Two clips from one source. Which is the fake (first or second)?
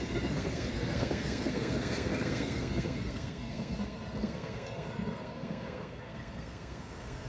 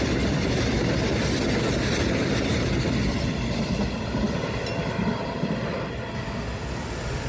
first